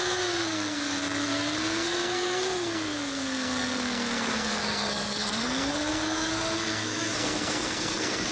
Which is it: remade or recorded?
remade